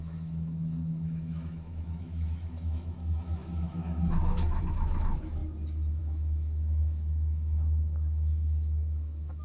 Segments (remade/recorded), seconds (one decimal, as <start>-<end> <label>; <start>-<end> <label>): 0.0-5.4 remade; 5.4-6.0 recorded; 6.0-9.4 remade